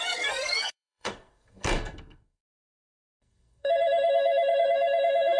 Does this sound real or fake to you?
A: fake